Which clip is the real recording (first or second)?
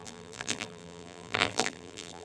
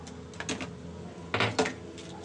second